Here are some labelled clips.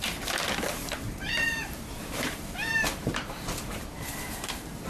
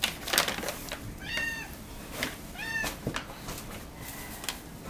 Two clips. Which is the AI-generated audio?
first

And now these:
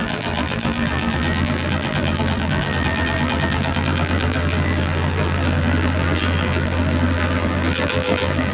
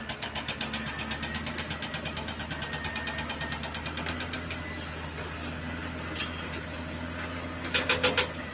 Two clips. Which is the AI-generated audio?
first